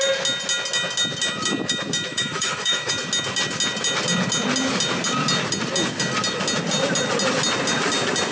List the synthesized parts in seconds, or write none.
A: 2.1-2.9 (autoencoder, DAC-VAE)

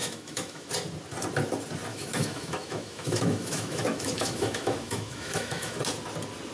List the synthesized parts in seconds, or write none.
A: 0.0-0.7 (autoencoder, DAC-VAE); 1.9-5.8

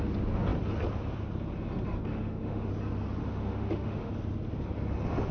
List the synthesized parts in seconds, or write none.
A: 2.1-2.7 (autoencoder, DAC-VAE); 3.2-4.1

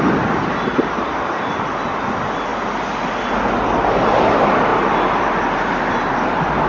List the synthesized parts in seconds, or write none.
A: none

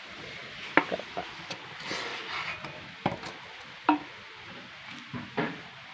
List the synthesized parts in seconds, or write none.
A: none

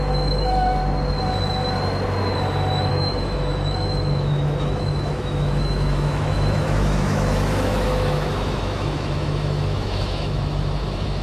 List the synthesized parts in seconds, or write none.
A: 0.0-0.8 (autoencoder, DAC-VAE); 2.9-11.2

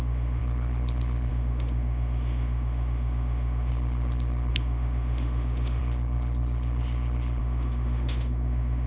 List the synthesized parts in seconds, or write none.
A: 0.0-0.4 (autoencoder, DAC-VAE); 1.3-3.7; 4.5-5.8; 7.4-8.9

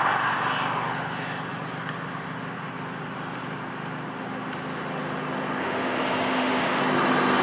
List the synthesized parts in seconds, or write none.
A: 5.6-6.8 (autoencoder, DAC-VAE)